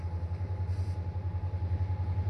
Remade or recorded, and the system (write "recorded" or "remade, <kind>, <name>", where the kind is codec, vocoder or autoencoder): recorded